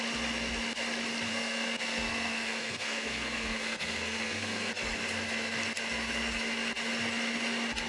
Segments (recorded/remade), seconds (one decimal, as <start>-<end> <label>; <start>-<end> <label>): 0.0-1.3 recorded; 1.3-4.7 remade; 4.7-7.9 recorded